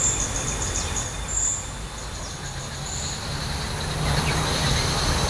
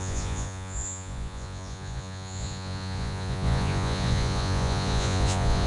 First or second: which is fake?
second